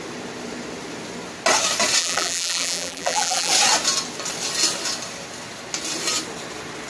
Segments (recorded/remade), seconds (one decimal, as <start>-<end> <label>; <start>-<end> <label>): 0.0-2.0 recorded; 2.0-3.5 remade; 3.5-6.9 recorded